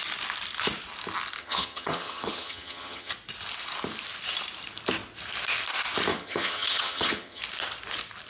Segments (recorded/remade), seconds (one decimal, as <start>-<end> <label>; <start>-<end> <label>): 0.0-1.4 recorded; 1.4-3.1 remade; 3.1-6.1 recorded; 6.1-7.4 remade; 7.4-8.3 recorded